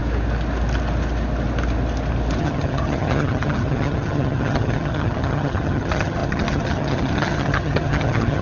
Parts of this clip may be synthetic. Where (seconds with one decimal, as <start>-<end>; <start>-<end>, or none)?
2.4-8.4